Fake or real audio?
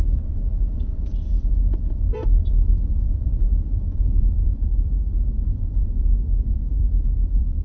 fake